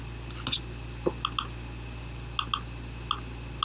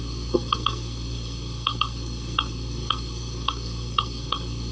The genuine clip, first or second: first